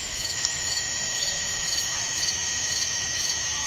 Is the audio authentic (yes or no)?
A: no